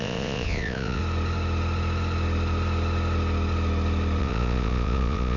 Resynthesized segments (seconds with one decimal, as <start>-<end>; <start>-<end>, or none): 0.0-1.0; 4.2-5.4